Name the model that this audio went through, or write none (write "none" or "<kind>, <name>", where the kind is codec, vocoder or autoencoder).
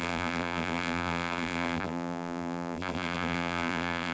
vocoder, BigVGAN v2